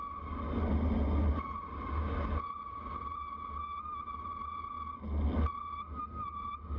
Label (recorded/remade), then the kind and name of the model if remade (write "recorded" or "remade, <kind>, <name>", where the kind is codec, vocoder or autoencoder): recorded